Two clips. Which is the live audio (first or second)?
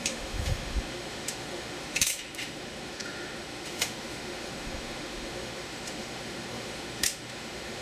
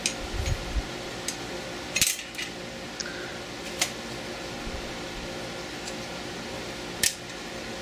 second